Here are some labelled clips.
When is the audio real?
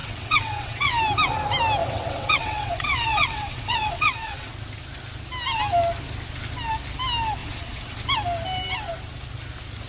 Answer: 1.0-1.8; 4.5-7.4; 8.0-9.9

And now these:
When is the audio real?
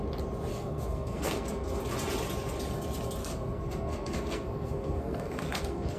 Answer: 0.0-0.5; 1.8-3.2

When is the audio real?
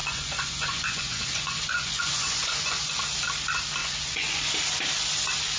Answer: 2.9-3.8; 4.4-5.6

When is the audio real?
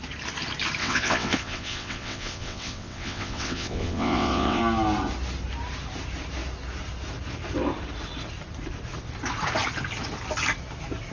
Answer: 0.0-0.8; 4.6-11.1